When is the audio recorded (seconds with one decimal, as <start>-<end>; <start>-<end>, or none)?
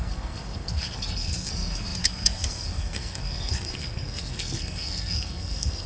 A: none